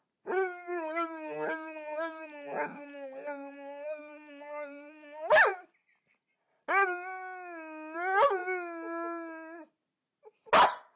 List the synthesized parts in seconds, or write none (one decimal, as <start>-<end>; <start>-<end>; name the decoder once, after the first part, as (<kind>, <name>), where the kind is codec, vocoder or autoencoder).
none